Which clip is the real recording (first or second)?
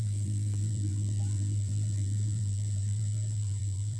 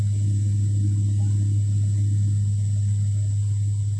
second